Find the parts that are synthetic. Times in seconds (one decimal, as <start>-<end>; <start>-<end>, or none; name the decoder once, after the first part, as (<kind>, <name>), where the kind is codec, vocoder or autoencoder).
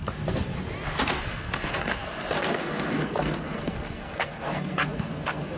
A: 0.0-0.5 (codec, SNAC); 1.1-5.6